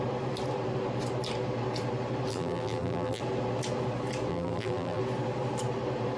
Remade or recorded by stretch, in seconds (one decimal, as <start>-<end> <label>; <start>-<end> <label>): 0.0-2.3 recorded; 2.3-3.2 remade; 3.2-4.3 recorded; 4.3-5.0 remade; 5.0-6.2 recorded